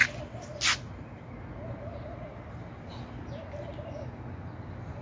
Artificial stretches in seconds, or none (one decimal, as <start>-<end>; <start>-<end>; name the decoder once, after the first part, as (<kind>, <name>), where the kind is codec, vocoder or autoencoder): none